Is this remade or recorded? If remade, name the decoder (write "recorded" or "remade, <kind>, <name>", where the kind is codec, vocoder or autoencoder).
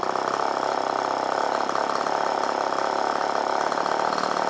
recorded